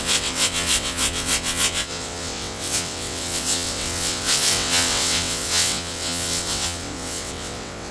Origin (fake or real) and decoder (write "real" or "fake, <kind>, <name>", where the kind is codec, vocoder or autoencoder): fake, vocoder, WaveNeXt